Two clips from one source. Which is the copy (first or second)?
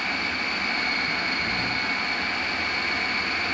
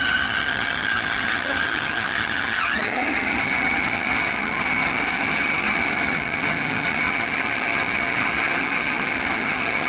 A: second